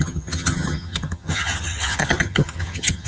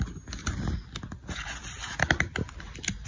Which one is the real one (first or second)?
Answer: second